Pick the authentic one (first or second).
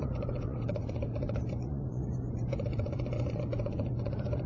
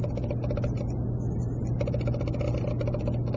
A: second